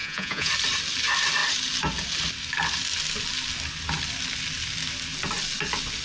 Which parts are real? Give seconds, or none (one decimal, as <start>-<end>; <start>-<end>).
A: 0.5-6.0